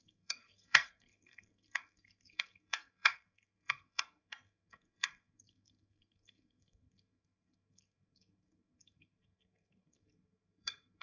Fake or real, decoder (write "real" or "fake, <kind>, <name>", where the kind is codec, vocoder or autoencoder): fake, codec, SNAC